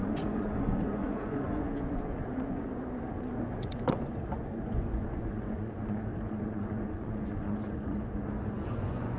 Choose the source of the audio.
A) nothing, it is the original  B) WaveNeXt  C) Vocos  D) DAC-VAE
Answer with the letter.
C